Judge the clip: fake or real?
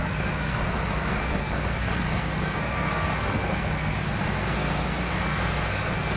fake